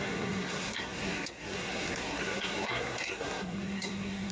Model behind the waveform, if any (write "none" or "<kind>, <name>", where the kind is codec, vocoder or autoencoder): codec, SNAC